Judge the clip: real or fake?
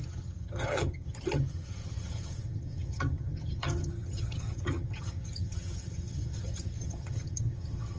fake